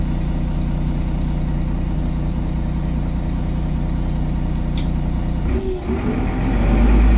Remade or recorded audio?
recorded